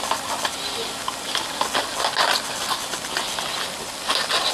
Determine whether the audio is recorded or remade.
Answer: recorded